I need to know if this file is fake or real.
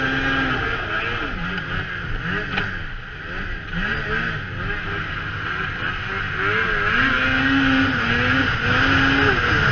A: real